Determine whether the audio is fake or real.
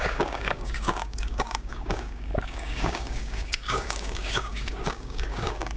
fake